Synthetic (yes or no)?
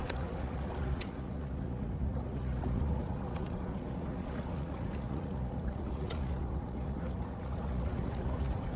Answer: yes